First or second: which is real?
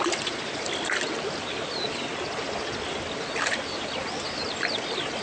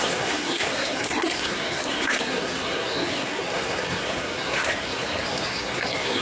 first